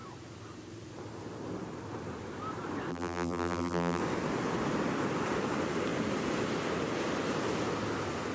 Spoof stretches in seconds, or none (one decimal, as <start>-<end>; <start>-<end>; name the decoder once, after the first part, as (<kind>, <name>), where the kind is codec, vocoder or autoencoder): 2.9-4.0 (vocoder, BigVGAN v2)